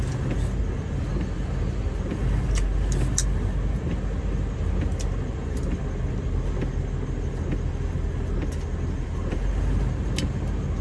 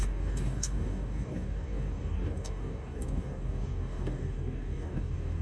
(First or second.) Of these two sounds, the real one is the first